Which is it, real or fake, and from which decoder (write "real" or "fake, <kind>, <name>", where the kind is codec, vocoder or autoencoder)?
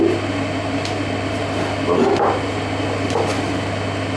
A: real